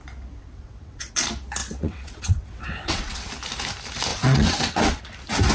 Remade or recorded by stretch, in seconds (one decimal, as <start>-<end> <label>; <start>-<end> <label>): 0.0-0.4 recorded; 0.4-1.1 remade; 1.1-1.6 recorded; 1.6-3.3 remade; 3.3-4.1 recorded; 4.1-5.0 remade; 5.0-5.5 recorded